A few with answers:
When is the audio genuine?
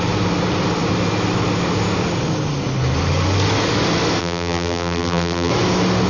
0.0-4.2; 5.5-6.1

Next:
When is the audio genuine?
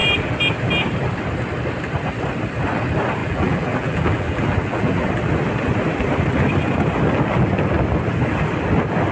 0.0-3.2; 5.1-9.1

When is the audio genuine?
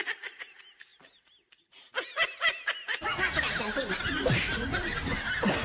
0.0-5.6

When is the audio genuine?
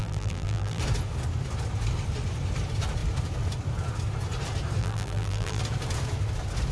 0.8-4.8; 5.6-6.7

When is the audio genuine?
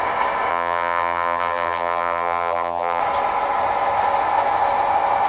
0.0-0.5; 3.0-5.3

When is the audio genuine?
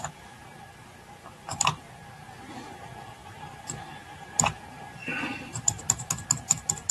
0.0-3.2; 3.9-5.0; 5.8-6.9